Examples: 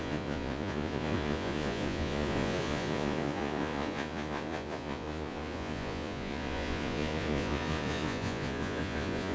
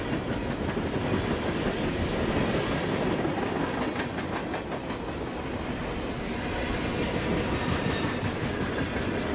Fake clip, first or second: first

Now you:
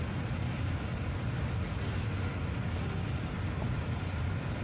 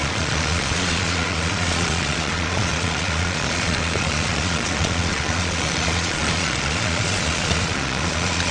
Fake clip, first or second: second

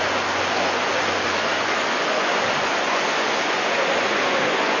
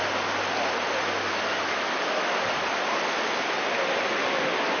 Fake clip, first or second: first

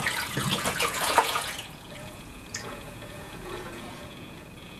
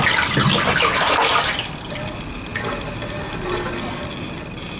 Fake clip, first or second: first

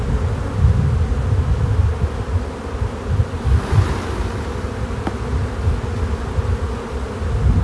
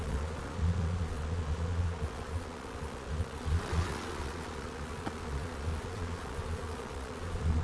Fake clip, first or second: second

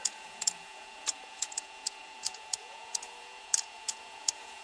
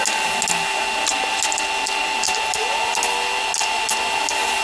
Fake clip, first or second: first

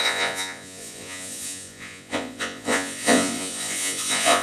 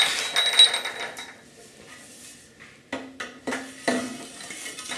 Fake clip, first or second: first